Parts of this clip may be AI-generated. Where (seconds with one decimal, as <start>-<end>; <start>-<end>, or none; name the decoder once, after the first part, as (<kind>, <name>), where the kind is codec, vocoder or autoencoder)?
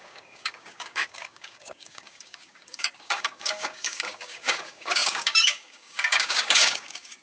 0.0-7.2 (codec, DAC)